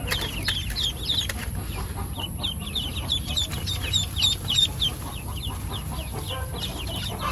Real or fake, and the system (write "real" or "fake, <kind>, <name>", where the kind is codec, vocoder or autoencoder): real